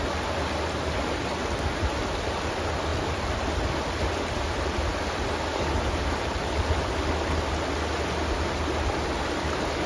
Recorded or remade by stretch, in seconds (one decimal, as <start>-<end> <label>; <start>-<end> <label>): 0.0-9.9 recorded